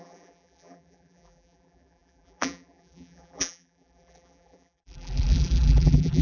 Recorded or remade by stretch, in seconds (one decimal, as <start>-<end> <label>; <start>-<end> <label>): 0.0-6.2 remade